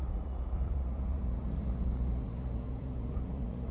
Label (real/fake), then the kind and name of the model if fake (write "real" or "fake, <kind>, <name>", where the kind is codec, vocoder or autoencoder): fake, vocoder, Vocos